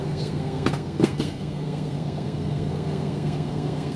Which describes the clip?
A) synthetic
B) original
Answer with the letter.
A